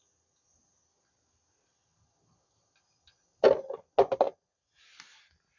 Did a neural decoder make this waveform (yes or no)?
no